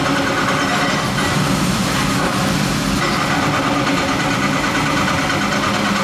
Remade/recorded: recorded